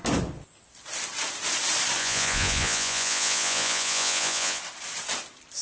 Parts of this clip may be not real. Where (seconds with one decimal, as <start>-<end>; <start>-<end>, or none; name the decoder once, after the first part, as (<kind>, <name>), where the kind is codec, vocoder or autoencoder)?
2.0-4.6 (vocoder, Vocos)